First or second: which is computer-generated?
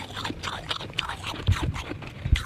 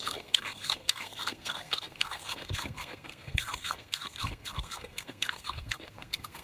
second